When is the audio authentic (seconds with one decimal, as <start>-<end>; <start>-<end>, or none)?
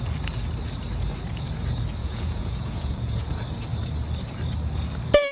0.0-2.0; 3.2-5.3